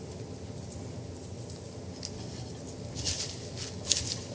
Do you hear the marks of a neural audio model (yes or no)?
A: no